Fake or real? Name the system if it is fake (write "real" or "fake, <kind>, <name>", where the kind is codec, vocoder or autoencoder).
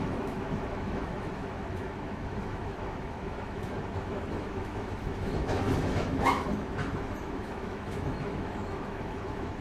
fake, autoencoder, DAC-VAE